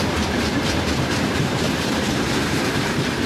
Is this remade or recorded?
remade